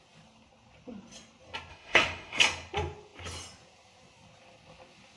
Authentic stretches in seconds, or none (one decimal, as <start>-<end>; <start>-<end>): 0.0-1.7; 2.4-5.2